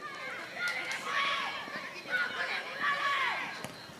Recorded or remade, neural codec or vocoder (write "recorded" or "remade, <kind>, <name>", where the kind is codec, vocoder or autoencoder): recorded